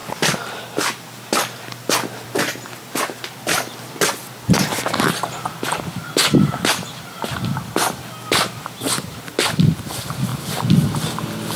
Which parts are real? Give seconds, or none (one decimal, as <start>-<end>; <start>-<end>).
0.0-11.6